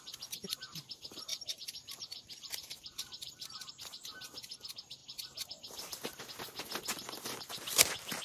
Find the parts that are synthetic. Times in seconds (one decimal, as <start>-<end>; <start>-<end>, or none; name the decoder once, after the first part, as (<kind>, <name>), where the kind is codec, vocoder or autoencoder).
1.3-3.7 (vocoder, BigVGAN v2)